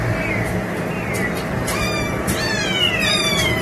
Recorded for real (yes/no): no